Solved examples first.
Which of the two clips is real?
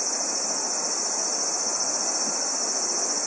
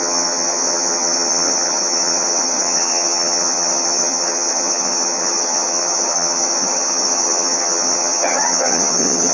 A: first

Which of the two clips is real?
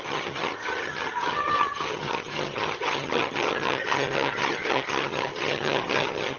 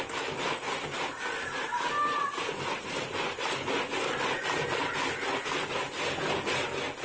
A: second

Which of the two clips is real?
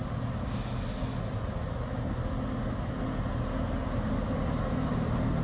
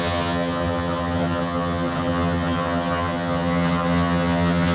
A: first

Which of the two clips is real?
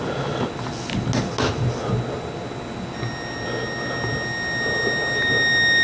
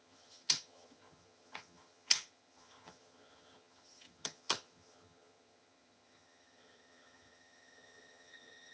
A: first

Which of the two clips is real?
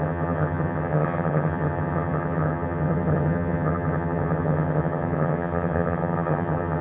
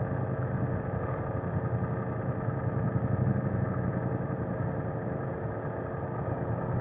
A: second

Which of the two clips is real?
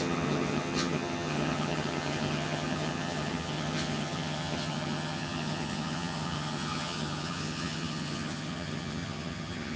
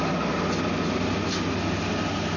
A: second